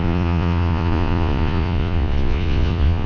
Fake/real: fake